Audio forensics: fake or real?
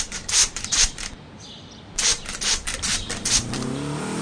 fake